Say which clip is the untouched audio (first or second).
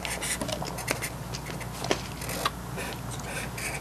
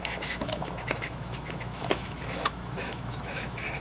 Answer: first